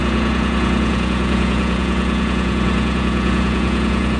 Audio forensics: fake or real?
fake